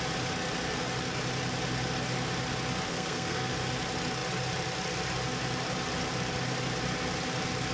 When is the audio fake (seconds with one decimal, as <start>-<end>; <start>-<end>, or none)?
2.9-3.5